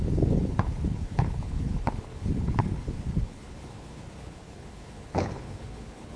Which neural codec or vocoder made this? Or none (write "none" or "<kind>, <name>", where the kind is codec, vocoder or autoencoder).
codec, HILCodec